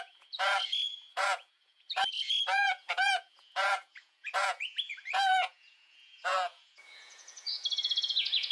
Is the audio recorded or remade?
remade